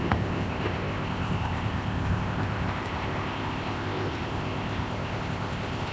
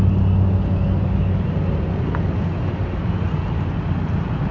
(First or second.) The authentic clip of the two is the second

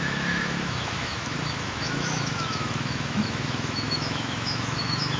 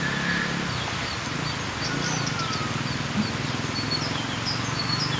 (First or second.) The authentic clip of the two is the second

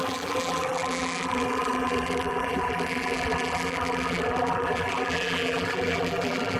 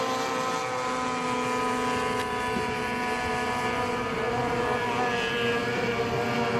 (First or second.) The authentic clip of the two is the second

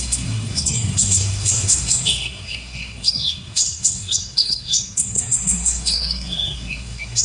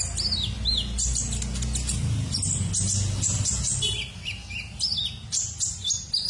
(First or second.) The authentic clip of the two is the second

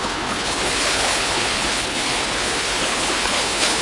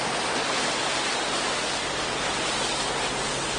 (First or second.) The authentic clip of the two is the second